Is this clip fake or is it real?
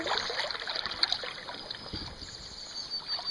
real